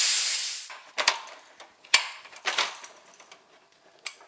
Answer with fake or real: real